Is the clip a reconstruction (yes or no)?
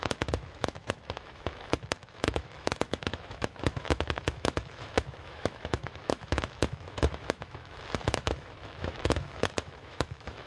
yes